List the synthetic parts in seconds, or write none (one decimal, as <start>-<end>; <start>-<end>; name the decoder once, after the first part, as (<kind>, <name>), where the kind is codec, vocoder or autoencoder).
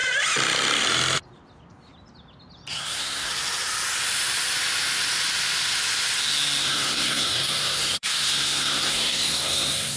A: 2.7-3.3 (codec, SNAC); 6.6-10.0